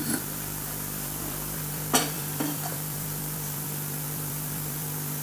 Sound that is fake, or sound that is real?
fake